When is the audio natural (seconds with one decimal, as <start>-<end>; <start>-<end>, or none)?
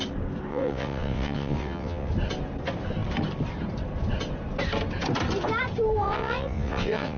0.0-0.5; 2.1-6.0